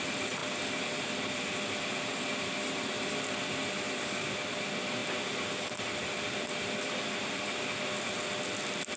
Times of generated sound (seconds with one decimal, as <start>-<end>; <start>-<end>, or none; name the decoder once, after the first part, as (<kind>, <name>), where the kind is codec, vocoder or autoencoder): none